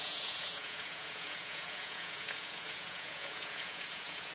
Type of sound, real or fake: fake